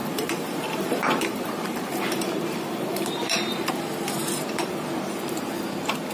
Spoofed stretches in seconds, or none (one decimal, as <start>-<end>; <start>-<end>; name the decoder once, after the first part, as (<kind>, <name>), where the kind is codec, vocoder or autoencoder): 0.0-3.7 (vocoder, BigVGAN v2); 4.2-4.7